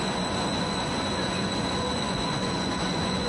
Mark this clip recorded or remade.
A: remade